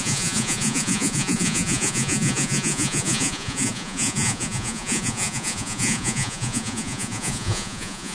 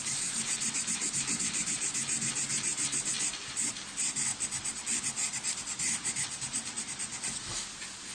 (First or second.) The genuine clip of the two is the second